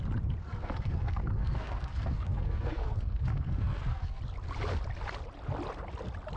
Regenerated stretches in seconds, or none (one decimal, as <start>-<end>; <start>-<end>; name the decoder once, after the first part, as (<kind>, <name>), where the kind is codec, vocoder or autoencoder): 0.4-4.2 (codec, SNAC)

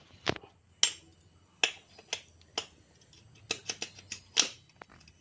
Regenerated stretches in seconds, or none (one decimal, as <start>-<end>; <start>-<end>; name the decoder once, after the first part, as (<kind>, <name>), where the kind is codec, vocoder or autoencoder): none

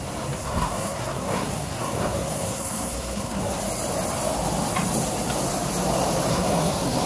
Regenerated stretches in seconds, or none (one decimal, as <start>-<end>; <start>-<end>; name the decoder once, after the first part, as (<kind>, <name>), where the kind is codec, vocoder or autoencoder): 0.4-3.6 (codec, SNAC); 6.3-7.1

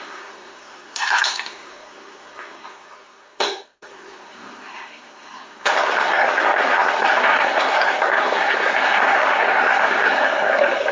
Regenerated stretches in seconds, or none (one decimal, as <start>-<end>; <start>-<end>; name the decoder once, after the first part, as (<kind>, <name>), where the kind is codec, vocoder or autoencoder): 0.0-10.9 (codec, SNAC)